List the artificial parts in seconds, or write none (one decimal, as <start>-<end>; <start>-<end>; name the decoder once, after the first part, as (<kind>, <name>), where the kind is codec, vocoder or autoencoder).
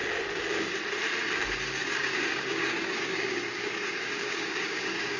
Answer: 1.8-5.2 (codec, DAC)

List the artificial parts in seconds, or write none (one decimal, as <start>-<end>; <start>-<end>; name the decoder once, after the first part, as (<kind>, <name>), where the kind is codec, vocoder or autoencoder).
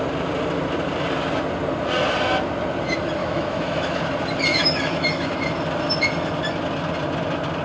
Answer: 3.2-4.0 (autoencoder, DAC-VAE); 4.5-5.3